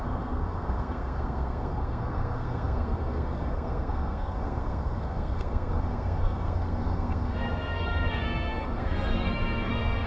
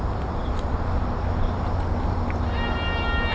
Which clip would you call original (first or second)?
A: second